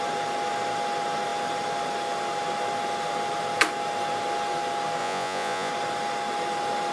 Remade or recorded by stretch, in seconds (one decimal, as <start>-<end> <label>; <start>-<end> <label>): 0.0-5.0 recorded; 5.0-5.7 remade; 5.7-6.9 recorded